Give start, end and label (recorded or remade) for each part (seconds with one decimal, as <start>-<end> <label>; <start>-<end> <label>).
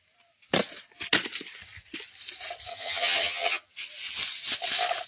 0.0-2.7 recorded; 2.7-3.7 remade; 3.7-5.1 recorded